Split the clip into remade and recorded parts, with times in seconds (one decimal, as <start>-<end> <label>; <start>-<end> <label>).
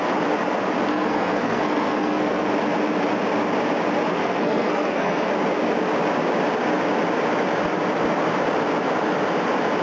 0.0-0.9 recorded; 0.9-2.5 remade; 2.5-4.1 recorded; 4.1-5.3 remade; 5.3-9.8 recorded